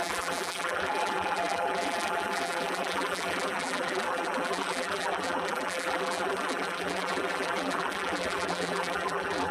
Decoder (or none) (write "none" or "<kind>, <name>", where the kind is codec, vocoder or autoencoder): vocoder, BigVGAN v2